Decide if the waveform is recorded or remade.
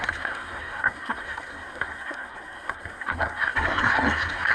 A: remade